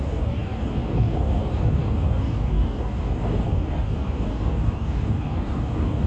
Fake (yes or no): yes